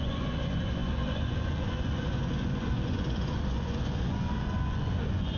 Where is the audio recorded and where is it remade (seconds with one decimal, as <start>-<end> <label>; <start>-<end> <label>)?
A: 0.0-5.4 remade